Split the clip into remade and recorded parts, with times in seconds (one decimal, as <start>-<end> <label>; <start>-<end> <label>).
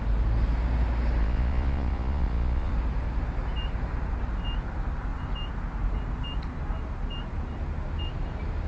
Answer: 0.0-1.2 recorded; 1.2-2.7 remade; 2.7-8.7 recorded